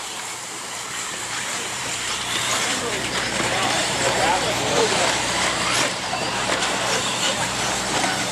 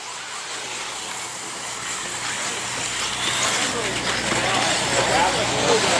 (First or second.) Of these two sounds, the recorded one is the second